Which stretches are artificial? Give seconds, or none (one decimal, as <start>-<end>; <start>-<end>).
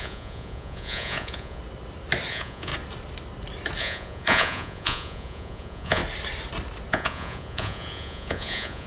0.0-1.6; 2.3-2.7; 3.8-6.0; 6.9-8.9